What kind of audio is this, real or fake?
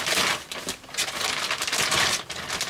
real